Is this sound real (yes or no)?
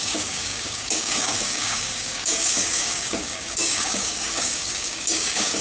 no